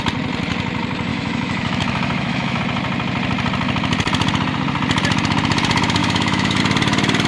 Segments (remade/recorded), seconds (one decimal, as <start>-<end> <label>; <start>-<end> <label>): 0.0-1.1 recorded; 1.1-2.6 remade; 2.6-6.0 recorded; 6.0-6.6 remade; 6.6-7.3 recorded